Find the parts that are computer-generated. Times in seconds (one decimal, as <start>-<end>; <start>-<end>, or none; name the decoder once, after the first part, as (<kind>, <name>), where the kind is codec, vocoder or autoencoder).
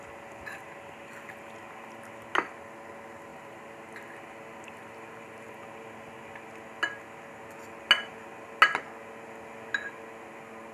3.3-5.5 (vocoder, BigVGAN v2)